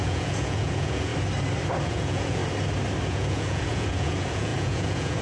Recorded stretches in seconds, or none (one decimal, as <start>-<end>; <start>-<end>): 1.1-1.9; 2.4-3.1